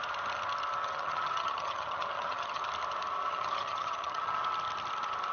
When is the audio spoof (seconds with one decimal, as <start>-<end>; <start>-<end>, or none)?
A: 0.8-2.6; 3.3-4.4